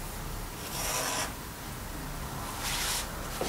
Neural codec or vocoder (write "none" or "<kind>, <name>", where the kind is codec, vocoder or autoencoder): none